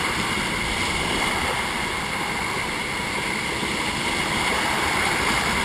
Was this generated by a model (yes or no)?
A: yes